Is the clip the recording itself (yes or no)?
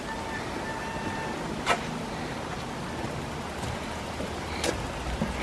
yes